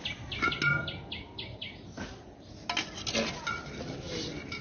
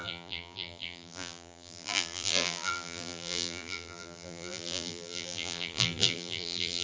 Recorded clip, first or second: first